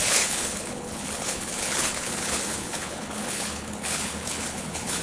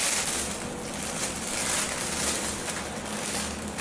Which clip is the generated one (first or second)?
first